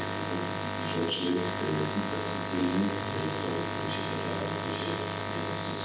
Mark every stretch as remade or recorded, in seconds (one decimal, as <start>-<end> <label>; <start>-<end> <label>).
0.0-2.6 recorded; 2.6-3.5 remade; 3.5-4.4 recorded; 4.4-5.2 remade; 5.2-5.8 recorded